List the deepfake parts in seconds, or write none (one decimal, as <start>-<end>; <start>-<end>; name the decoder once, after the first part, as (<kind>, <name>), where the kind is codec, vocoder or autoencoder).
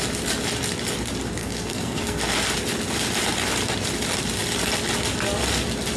1.4-2.2 (codec, SNAC)